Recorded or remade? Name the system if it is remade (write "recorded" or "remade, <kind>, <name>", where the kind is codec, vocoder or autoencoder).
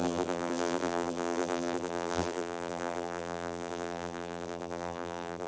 remade, vocoder, BigVGAN v2